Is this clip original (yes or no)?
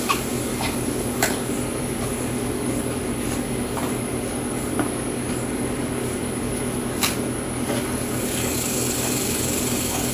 no